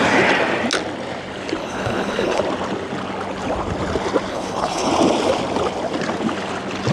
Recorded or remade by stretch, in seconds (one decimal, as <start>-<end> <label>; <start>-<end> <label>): 0.0-1.6 recorded; 1.6-2.4 remade; 2.4-4.3 recorded; 4.3-4.9 remade; 4.9-6.9 recorded